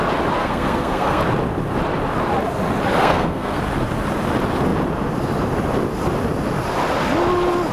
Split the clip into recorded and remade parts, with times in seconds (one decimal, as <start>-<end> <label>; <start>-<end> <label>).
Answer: 0.0-0.4 recorded; 0.4-1.2 remade; 1.2-3.0 recorded; 3.0-3.6 remade; 3.6-7.7 recorded